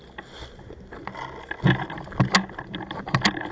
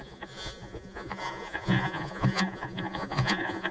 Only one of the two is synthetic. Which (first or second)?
second